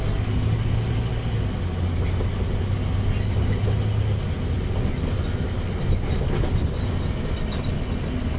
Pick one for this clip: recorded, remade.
recorded